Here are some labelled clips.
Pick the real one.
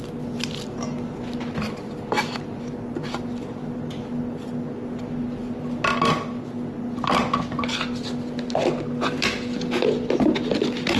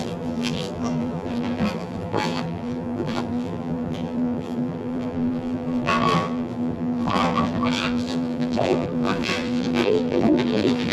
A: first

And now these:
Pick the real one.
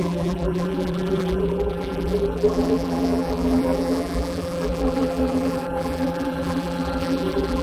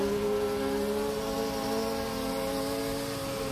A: second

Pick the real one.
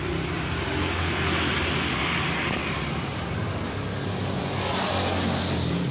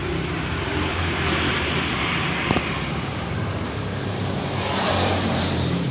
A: first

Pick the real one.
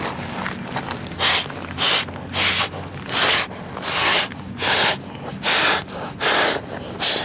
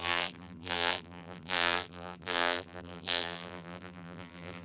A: first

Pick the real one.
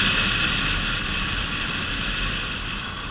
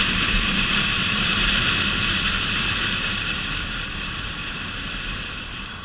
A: first